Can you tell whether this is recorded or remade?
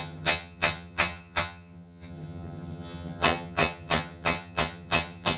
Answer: remade